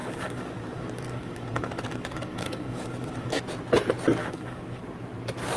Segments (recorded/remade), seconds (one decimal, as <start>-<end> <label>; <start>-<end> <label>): 0.0-3.4 remade; 3.4-4.2 recorded; 4.2-4.8 remade; 4.8-5.6 recorded